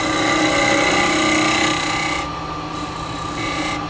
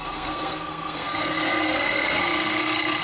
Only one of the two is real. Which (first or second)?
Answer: first